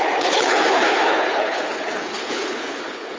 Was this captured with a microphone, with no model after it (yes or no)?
no